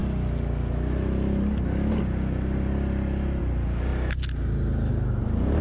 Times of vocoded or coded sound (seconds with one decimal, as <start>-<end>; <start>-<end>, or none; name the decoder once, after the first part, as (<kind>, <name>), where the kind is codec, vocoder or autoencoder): none